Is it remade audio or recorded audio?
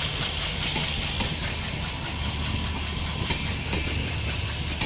recorded